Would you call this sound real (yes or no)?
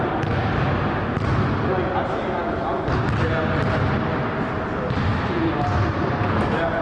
yes